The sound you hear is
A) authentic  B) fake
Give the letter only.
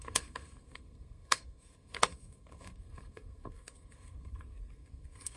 B